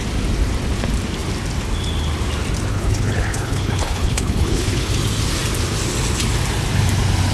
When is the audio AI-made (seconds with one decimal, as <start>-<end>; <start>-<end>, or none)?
2.7-4.9